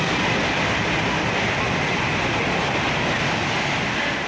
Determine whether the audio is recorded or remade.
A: recorded